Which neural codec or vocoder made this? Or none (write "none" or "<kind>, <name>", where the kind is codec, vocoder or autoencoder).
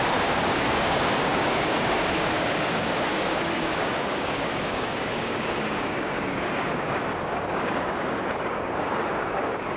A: codec, DAC